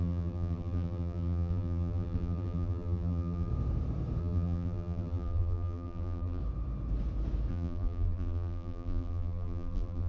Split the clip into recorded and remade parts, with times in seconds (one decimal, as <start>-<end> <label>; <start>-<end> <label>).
0.0-3.5 remade; 3.5-4.2 recorded; 4.2-6.4 remade; 6.4-7.5 recorded; 7.5-10.1 remade